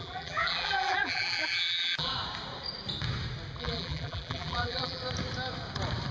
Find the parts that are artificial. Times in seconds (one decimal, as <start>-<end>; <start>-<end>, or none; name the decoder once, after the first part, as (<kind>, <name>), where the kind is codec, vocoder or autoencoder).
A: 0.0-2.1 (vocoder, BigVGAN v2); 3.6-5.0